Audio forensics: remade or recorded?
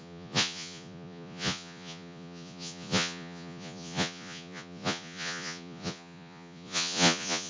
remade